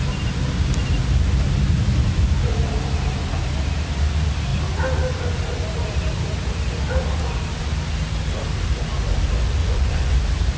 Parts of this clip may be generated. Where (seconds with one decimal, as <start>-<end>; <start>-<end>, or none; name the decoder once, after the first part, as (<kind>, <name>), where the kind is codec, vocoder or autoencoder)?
9.6-10.2 (vocoder, Vocos)

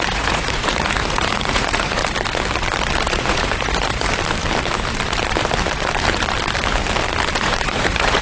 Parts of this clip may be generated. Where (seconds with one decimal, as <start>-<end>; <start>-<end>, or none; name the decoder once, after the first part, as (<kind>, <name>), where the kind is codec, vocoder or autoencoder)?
0.0-2.0 (vocoder, Vocos); 3.1-4.1; 7.4-8.2

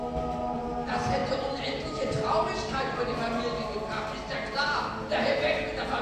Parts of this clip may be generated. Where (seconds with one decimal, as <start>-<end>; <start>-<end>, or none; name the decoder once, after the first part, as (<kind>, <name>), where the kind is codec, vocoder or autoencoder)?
none